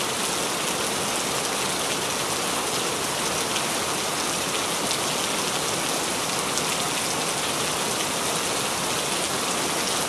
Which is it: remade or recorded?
recorded